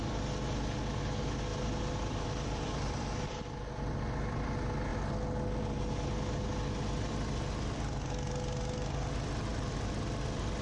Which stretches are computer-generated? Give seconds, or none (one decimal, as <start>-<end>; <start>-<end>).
1.5-3.4; 9.5-10.0